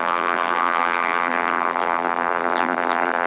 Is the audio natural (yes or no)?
no